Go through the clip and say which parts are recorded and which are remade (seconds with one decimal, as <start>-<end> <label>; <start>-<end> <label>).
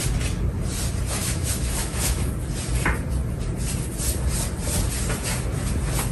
0.0-1.2 recorded; 1.2-2.3 remade; 2.3-6.1 recorded